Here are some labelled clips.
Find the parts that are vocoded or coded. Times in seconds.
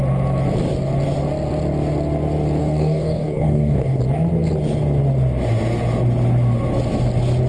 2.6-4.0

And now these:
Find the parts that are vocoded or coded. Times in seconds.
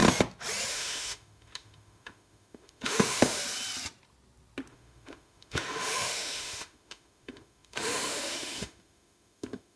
0.7-3.4; 4.7-9.8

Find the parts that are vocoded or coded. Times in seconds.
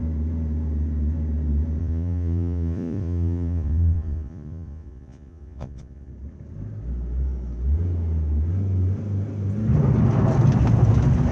1.8-6.1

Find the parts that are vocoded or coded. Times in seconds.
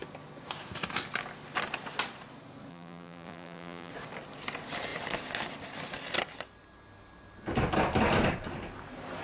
2.7-3.9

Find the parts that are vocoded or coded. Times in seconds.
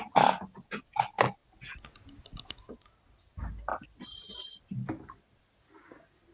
none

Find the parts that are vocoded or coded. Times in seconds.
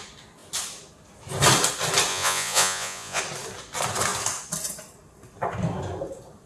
2.1-3.2